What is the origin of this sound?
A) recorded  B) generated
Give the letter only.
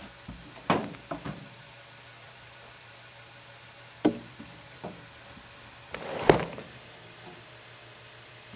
B